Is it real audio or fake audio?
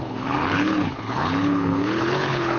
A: fake